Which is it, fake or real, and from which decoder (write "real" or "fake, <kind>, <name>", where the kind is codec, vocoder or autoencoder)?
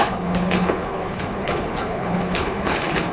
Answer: fake, codec, HILCodec